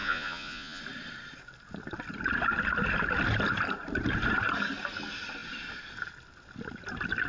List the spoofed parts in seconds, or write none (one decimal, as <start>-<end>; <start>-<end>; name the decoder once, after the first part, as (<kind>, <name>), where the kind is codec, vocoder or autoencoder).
0.0-0.8 (vocoder, Vocos)